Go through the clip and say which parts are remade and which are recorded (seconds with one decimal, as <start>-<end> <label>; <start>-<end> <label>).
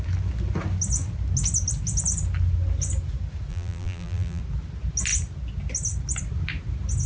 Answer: 0.0-3.5 recorded; 3.5-4.4 remade; 4.4-7.1 recorded